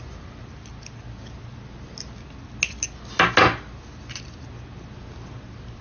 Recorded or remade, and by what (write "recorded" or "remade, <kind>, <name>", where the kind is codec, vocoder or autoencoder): recorded